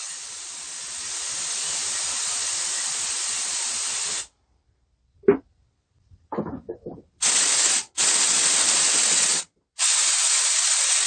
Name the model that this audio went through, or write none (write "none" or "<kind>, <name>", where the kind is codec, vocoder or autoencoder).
none